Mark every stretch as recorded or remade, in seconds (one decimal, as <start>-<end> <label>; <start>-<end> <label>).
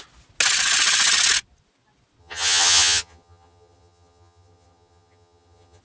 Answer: 0.0-2.2 recorded; 2.2-5.8 remade